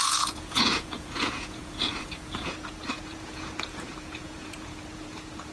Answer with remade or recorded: remade